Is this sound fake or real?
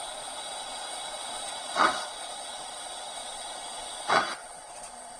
fake